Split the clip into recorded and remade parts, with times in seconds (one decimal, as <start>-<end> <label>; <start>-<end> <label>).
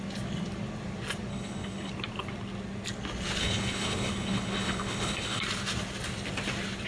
0.0-1.3 recorded; 1.3-1.9 remade; 1.9-3.4 recorded; 3.4-5.4 remade; 5.4-6.9 recorded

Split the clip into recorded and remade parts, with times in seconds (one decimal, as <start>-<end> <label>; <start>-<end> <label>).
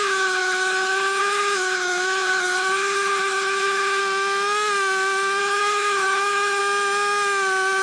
0.0-4.0 remade; 4.0-5.4 recorded; 5.4-6.6 remade; 6.6-7.8 recorded